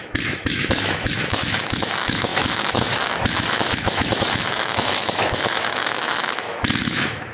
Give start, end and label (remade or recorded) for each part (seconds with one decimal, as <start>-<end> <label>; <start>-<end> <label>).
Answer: 0.0-7.3 remade